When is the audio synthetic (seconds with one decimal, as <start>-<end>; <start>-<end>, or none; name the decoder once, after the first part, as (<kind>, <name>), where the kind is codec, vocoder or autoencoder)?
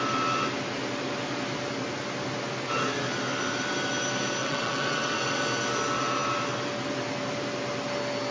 4.4-5.4 (vocoder, WaveNeXt)